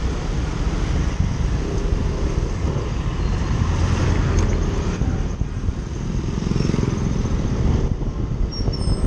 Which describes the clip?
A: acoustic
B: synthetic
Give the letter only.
A